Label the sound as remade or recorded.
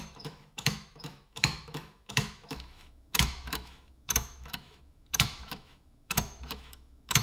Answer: remade